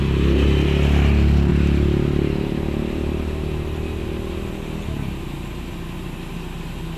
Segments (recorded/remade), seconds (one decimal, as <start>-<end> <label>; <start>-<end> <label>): 0.0-7.0 recorded